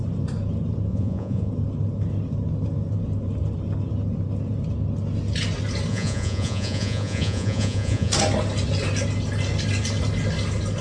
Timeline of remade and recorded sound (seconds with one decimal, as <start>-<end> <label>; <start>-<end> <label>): 0.0-0.9 recorded; 0.9-1.5 remade; 1.5-5.9 recorded; 5.9-8.1 remade; 8.1-10.8 recorded